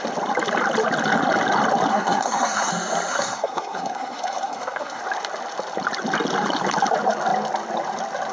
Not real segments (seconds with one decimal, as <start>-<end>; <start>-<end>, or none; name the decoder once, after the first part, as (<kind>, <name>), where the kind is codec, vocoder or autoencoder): 1.9-2.7 (codec, SNAC); 3.1-5.0